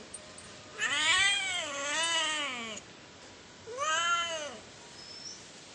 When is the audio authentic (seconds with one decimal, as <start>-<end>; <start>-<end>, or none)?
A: 1.8-5.2

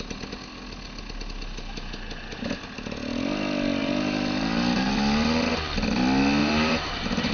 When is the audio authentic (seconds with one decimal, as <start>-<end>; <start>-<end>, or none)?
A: 0.0-3.8; 4.9-6.4

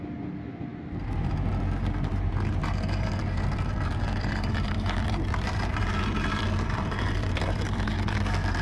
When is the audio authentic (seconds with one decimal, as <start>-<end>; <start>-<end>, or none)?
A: 0.0-3.2; 7.9-8.6

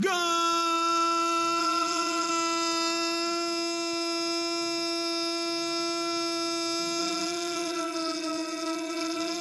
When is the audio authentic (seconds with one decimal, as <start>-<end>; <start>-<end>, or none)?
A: 0.0-1.6; 2.3-7.0